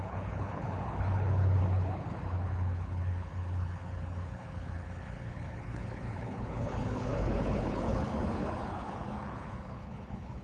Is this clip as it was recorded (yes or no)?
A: no